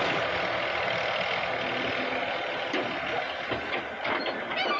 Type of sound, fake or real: real